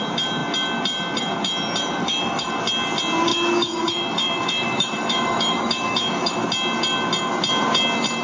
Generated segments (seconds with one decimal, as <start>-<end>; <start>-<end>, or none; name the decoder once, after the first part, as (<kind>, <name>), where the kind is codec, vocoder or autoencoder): 2.0-2.5 (autoencoder, DAC-VAE); 3.3-6.4